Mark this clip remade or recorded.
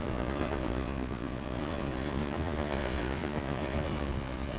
remade